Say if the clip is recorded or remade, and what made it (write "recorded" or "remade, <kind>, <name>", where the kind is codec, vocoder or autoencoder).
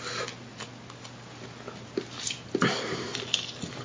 recorded